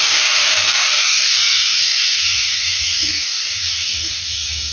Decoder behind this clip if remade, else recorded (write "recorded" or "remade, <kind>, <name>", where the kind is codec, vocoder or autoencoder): remade, codec, DAC